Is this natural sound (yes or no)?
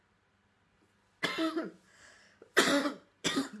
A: yes